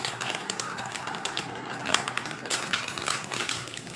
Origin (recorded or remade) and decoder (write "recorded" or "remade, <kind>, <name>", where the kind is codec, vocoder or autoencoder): remade, codec, SNAC